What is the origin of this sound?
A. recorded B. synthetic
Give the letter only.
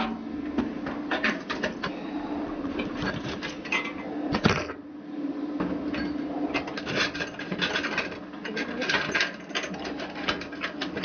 A